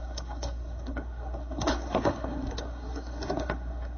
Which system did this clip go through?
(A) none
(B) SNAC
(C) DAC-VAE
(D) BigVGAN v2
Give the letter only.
B